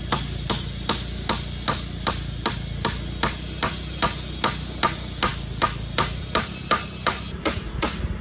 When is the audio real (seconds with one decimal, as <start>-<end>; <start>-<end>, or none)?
0.0-8.2